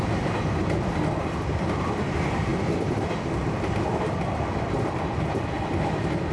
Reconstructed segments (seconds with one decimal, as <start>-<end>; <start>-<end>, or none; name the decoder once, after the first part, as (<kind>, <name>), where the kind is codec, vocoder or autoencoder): 2.5-5.5 (vocoder, BigVGAN v2)